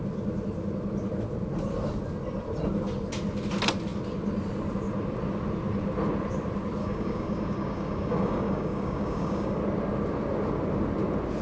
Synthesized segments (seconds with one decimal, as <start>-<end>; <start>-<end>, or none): 6.8-9.6